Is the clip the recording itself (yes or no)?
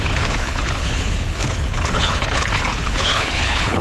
no